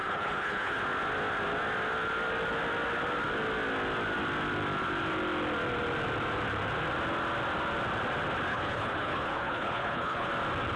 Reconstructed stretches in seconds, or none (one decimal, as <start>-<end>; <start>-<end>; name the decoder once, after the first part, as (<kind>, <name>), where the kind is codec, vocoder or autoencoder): 0.0-0.8 (codec, HILCodec); 8.5-10.3